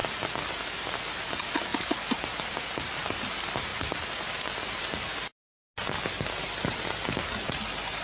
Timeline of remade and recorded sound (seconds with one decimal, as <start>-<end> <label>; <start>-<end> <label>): 0.0-8.0 recorded